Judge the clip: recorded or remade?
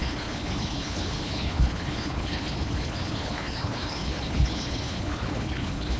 remade